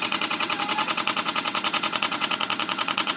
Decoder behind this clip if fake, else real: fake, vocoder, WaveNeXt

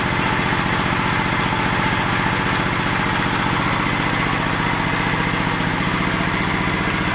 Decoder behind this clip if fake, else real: real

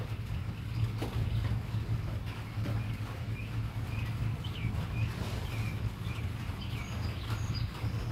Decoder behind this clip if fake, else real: fake, codec, DAC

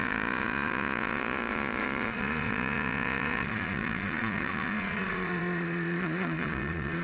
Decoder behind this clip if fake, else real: fake, vocoder, Vocos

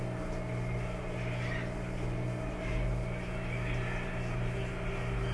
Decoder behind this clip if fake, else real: real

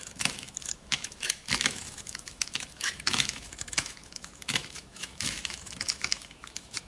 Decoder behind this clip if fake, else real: fake, autoencoder, DAC-VAE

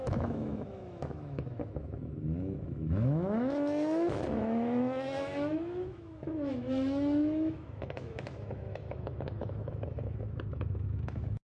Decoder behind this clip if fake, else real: fake, autoencoder, DAC-VAE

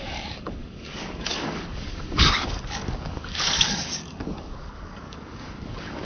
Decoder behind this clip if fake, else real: fake, codec, DAC